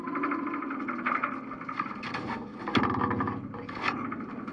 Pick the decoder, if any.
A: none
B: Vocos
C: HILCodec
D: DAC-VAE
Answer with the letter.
A